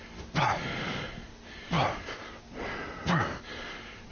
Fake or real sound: real